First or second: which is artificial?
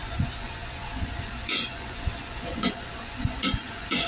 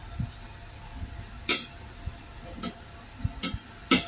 first